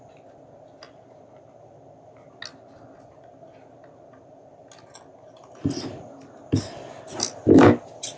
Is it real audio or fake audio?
real